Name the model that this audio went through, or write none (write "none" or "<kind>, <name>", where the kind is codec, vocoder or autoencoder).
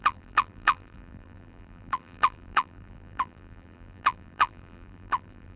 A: vocoder, BigVGAN v2